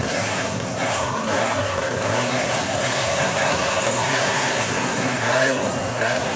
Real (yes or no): no